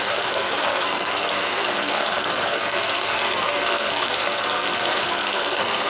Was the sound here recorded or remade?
remade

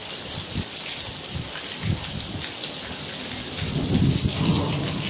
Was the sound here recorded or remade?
recorded